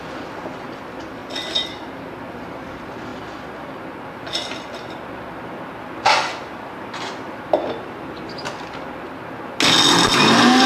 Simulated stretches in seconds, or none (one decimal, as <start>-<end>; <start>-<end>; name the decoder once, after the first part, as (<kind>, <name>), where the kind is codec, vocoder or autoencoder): none